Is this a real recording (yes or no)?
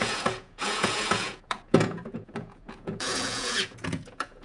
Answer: no